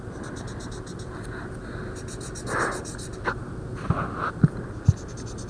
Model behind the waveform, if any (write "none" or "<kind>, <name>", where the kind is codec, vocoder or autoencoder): none